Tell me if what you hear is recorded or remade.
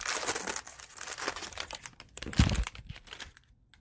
recorded